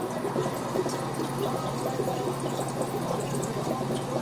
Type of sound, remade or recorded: recorded